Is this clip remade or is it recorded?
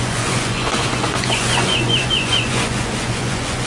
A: remade